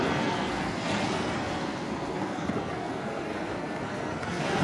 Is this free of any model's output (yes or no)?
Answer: no